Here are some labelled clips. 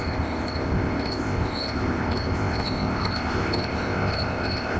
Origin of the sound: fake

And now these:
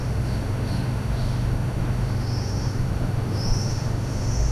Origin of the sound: fake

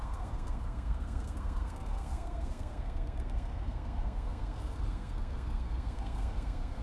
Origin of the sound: fake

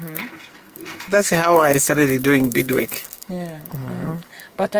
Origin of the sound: fake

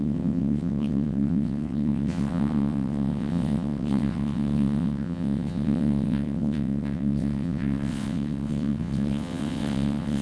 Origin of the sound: fake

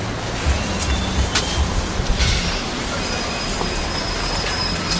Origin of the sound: real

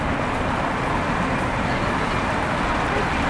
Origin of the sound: real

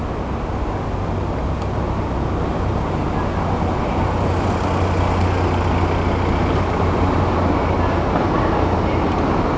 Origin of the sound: real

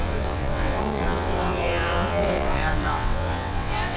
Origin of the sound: fake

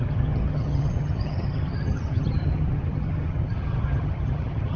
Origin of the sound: fake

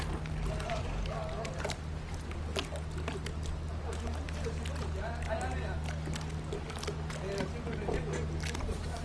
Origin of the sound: real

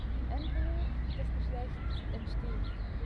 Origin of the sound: real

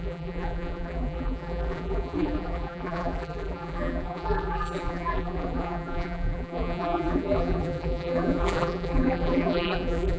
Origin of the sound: fake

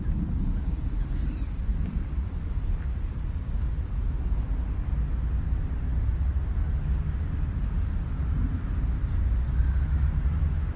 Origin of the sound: real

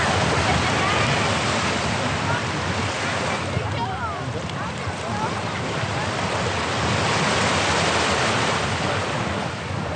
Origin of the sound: real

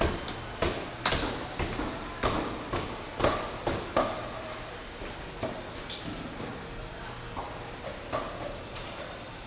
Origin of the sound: real